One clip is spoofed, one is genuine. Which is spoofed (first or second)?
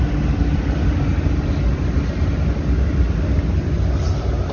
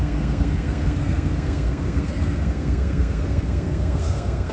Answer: second